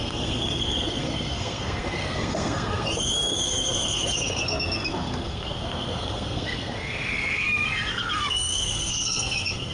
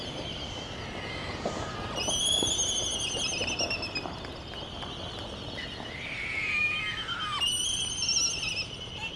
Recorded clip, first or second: second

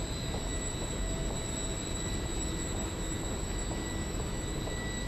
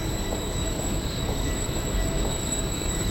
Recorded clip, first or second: first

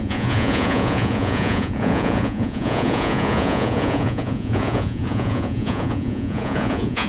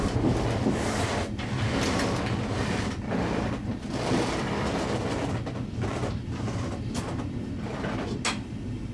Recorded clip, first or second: second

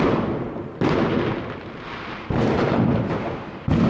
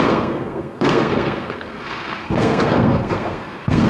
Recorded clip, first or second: first